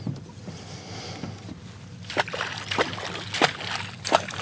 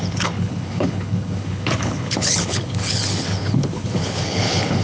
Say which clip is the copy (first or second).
second